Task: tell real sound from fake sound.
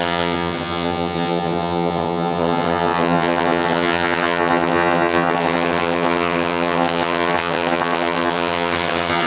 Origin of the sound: fake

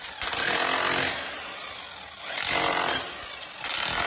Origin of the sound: real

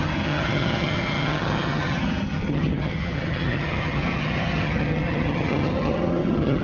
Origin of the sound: fake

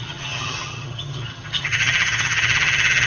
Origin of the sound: fake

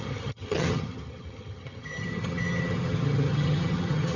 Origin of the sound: fake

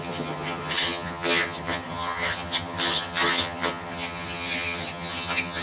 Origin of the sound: fake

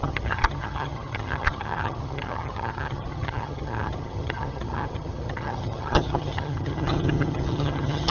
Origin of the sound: fake